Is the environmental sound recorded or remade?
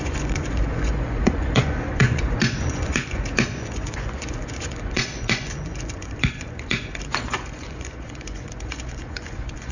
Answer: remade